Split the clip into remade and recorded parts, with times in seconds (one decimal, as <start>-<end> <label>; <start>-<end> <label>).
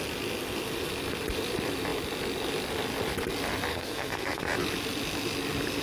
0.0-3.7 recorded; 3.7-4.4 remade; 4.4-5.8 recorded